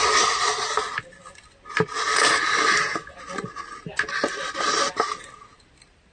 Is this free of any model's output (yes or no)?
yes